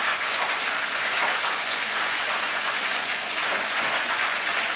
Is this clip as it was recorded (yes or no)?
no